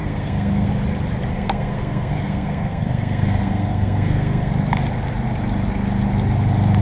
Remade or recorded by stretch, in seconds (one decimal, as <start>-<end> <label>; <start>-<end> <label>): 0.0-0.7 remade; 0.7-1.3 recorded; 1.3-4.5 remade; 4.5-6.8 recorded